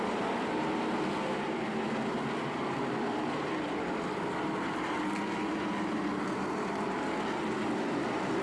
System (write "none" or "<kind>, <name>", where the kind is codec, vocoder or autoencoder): vocoder, BigVGAN v2